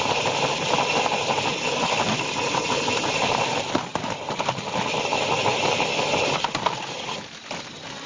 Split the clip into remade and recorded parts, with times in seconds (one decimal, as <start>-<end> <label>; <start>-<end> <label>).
0.0-8.1 recorded